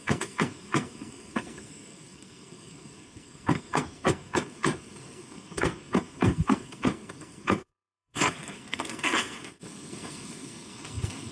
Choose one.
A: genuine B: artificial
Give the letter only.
B